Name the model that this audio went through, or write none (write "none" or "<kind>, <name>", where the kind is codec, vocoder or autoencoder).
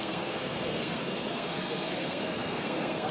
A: codec, SNAC